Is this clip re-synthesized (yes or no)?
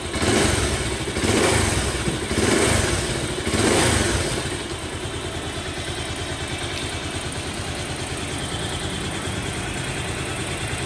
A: no